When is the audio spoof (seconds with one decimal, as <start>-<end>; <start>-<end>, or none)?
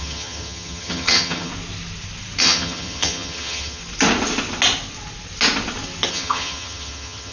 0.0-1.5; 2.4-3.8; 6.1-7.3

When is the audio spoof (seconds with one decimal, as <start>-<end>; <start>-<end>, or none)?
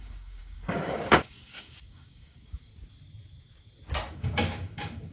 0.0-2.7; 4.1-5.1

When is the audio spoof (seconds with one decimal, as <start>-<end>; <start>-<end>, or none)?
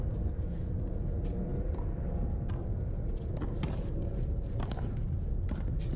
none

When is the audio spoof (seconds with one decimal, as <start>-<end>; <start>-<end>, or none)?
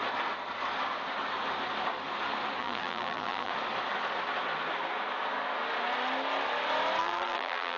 2.6-3.5; 7.0-7.8